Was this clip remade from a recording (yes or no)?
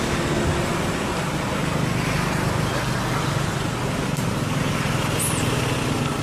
no